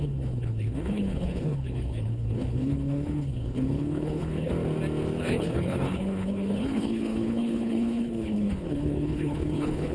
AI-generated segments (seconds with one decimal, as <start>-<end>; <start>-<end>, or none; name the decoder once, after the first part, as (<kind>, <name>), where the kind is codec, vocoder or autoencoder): 0.0-4.5 (codec, HILCodec); 5.2-9.9